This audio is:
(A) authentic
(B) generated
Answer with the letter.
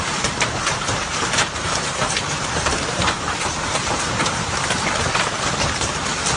B